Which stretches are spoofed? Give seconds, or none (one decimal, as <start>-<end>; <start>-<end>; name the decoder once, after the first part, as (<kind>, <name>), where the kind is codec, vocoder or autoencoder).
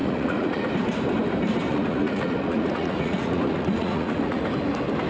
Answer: 0.0-0.6 (vocoder, Vocos); 1.7-4.4